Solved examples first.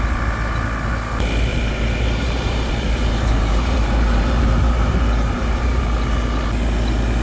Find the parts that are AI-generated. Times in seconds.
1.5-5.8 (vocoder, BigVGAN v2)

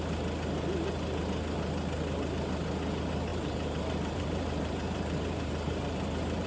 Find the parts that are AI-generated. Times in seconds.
3.3-6.5 (vocoder, BigVGAN v2)

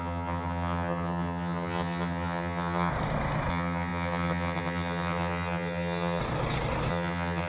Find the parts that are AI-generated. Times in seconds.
0.0-2.9 (vocoder, HiFi-GAN); 3.5-6.2; 6.9-7.5

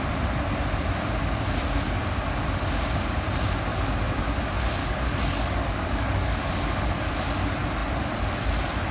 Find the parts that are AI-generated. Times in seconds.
3.7-4.2 (codec, DAC); 4.8-7.1

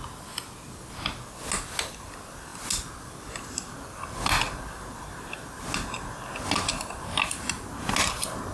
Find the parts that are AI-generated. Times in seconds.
none

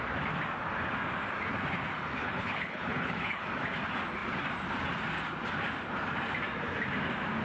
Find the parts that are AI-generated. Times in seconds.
2.2-3.4 (codec, HILCodec)